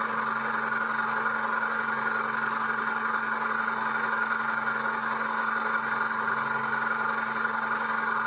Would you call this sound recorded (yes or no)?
yes